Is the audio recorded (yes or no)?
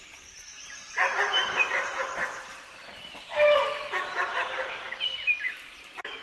no